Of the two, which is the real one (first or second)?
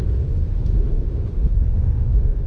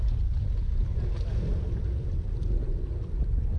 second